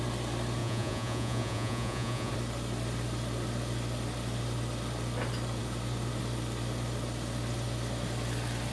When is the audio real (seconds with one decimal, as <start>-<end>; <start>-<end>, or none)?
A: 0.0-0.6; 2.3-8.7

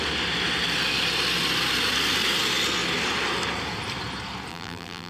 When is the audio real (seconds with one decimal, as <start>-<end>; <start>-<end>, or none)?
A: 0.0-4.5

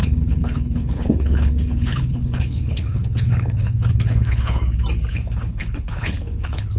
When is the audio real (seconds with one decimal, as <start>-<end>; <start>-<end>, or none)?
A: 4.6-5.1

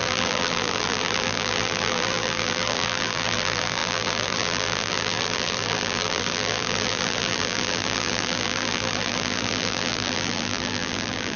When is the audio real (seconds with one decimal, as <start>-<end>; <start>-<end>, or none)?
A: none